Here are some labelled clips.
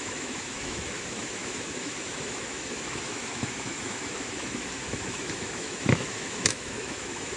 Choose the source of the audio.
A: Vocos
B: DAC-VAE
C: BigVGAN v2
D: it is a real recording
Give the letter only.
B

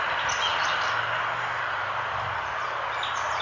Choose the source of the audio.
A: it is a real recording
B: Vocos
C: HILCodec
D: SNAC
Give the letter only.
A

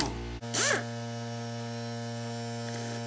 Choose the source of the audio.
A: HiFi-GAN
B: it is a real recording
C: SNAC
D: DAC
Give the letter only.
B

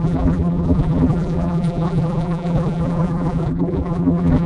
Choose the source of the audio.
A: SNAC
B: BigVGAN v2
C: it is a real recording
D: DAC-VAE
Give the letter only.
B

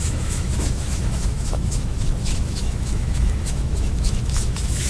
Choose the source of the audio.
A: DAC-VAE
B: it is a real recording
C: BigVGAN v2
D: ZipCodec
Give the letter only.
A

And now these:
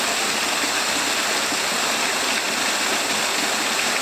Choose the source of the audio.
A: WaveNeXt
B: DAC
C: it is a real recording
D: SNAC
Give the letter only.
C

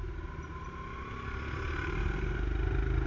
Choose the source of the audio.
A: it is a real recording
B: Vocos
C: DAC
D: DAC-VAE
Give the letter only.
A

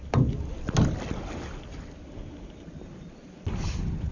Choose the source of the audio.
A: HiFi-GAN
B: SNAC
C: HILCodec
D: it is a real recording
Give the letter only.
D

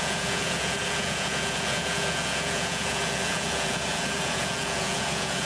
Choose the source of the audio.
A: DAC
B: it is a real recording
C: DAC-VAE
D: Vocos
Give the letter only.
D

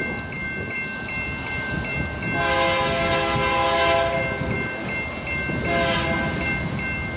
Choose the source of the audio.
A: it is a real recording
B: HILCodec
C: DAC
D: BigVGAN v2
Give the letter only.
A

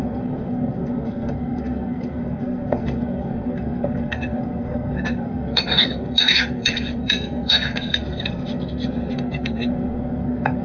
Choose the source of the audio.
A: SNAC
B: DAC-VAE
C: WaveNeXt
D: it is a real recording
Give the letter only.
A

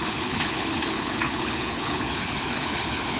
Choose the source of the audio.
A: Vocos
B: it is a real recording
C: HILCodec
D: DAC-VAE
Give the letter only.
C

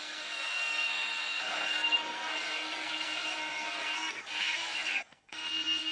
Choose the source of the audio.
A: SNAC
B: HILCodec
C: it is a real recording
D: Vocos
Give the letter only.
A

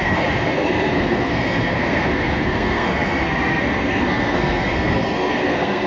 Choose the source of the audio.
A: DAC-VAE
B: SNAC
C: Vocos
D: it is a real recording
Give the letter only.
B